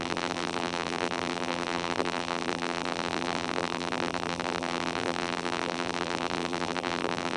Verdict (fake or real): fake